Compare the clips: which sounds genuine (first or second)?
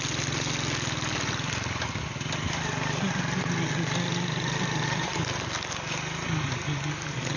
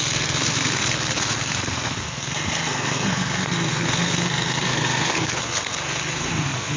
first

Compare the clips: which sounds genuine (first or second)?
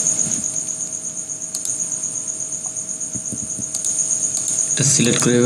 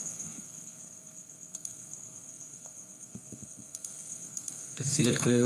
first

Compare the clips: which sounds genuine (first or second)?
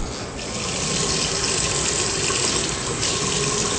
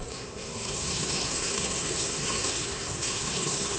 first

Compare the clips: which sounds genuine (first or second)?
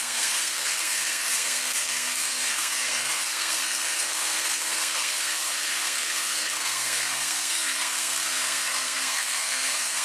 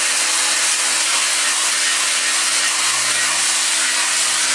second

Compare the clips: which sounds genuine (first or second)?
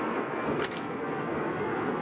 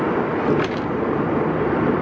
second